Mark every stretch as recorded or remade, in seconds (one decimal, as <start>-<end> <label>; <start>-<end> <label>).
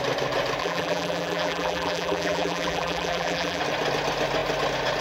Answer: 0.0-0.6 recorded; 0.6-3.6 remade; 3.6-5.0 recorded